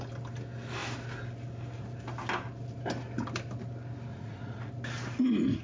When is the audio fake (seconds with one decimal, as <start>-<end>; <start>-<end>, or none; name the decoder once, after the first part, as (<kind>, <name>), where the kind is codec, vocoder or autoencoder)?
4.1-4.7 (vocoder, Vocos)